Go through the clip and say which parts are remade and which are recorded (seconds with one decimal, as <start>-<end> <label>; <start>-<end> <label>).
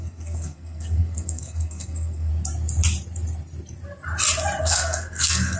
0.0-2.3 remade; 2.3-4.6 recorded; 4.6-5.6 remade